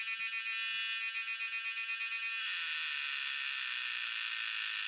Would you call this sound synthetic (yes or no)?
no